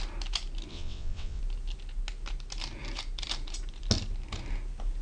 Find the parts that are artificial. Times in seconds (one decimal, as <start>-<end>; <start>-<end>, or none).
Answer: 0.7-1.4